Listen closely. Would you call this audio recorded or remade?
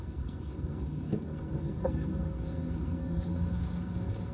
remade